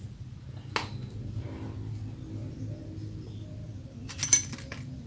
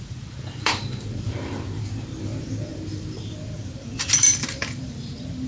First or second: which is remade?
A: second